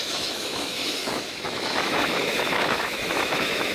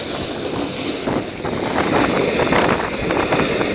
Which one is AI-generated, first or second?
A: first